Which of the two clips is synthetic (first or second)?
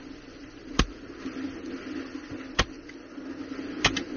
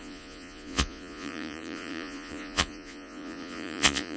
second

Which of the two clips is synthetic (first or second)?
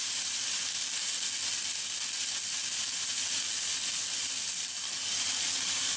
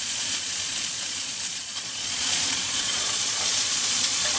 second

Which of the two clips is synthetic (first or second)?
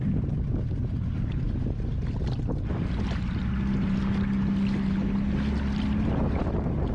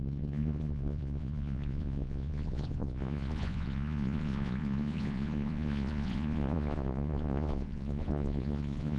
second